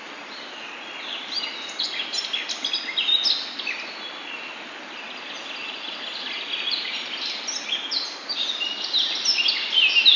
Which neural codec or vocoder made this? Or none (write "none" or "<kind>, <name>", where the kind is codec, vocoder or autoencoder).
none